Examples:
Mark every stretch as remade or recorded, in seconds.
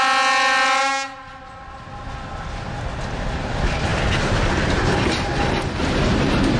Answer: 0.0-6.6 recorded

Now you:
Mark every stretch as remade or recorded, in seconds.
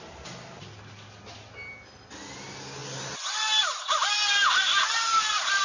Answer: 0.0-5.6 recorded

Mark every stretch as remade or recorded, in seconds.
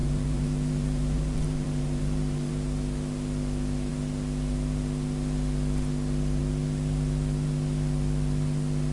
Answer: 0.0-2.5 remade; 2.5-8.9 recorded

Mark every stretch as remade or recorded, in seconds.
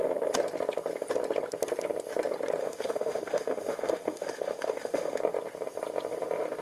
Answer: 0.0-2.6 recorded; 2.6-5.2 remade; 5.2-6.6 recorded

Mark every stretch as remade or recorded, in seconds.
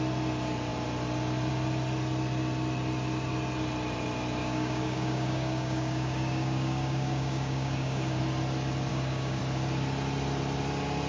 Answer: 0.0-4.4 recorded; 4.4-8.2 remade; 8.2-8.9 recorded; 8.9-9.4 remade; 9.4-11.1 recorded